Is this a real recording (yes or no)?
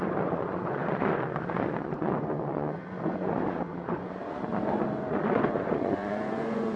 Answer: no